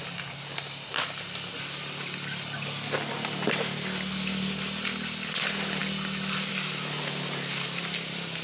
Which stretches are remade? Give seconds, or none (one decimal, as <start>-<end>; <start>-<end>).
none